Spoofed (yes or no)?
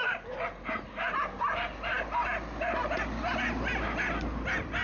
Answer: no